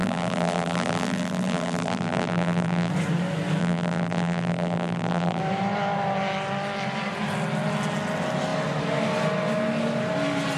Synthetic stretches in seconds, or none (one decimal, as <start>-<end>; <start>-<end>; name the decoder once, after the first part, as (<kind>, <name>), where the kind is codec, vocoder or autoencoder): 0.0-2.9 (vocoder, BigVGAN v2); 3.6-5.4